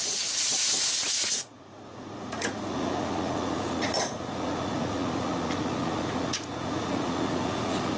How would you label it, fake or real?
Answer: fake